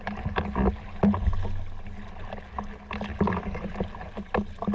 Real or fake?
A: real